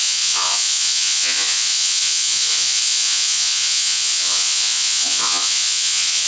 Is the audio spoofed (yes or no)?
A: yes